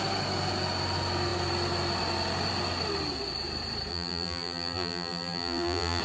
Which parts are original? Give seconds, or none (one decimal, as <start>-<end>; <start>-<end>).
0.0-3.9